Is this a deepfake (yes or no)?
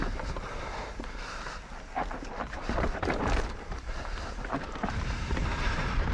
yes